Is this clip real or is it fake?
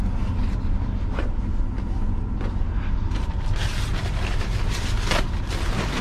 real